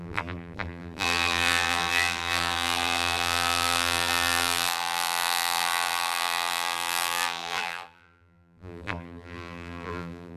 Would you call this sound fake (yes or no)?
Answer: yes